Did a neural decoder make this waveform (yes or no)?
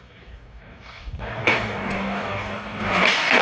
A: yes